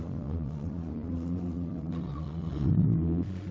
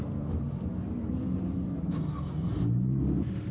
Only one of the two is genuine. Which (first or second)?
second